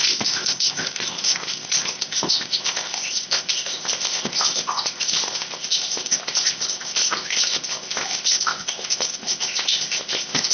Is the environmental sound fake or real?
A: fake